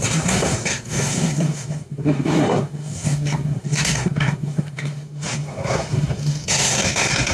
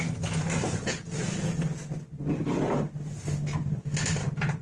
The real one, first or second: second